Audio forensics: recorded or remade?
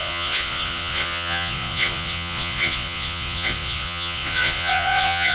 remade